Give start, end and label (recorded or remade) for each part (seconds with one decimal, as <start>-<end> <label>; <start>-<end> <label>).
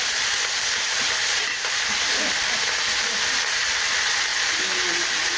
0.0-4.3 remade; 4.3-5.4 recorded